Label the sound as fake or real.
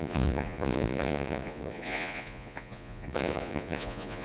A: fake